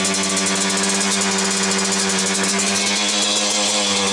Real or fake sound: real